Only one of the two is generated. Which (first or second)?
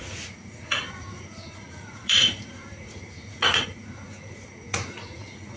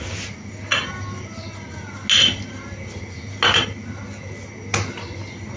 first